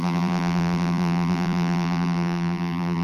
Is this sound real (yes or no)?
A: no